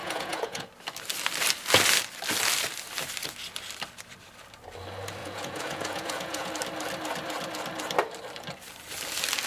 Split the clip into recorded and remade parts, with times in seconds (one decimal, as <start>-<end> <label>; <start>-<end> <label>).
0.0-0.7 remade; 0.7-5.2 recorded; 5.2-6.5 remade; 6.5-9.5 recorded